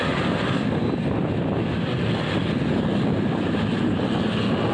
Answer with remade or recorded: recorded